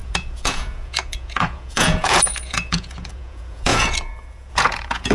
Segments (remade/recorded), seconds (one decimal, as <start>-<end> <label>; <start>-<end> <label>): 0.0-5.1 remade